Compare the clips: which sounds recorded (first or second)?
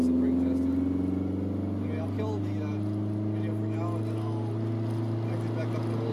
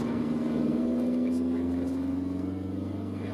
first